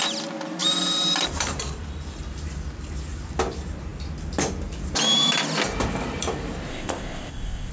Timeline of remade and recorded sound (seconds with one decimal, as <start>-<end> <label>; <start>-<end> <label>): 0.0-6.7 recorded; 6.7-7.7 remade